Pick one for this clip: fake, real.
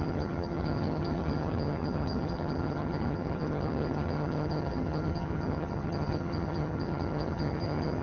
fake